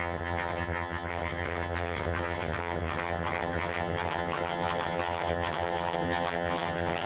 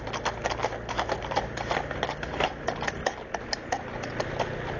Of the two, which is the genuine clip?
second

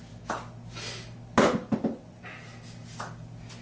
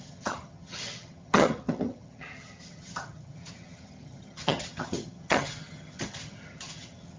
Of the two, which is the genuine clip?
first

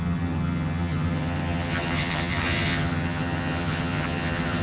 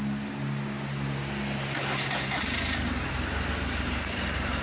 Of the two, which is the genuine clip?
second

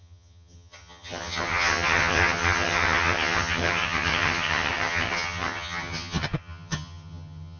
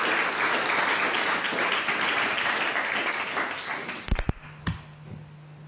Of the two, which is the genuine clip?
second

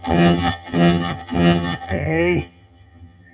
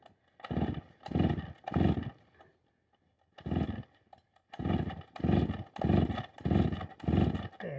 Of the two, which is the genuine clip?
second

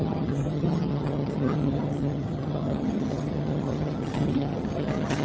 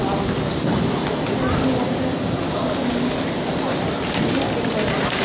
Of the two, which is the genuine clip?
second